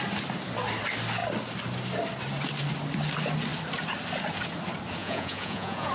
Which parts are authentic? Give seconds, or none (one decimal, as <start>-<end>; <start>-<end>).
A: 0.0-5.0